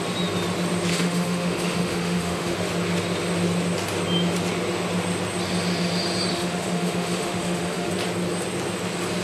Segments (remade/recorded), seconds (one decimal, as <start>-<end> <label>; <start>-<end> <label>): 0.0-0.9 recorded; 0.9-2.7 remade; 2.7-6.3 recorded; 6.3-7.9 remade; 7.9-9.2 recorded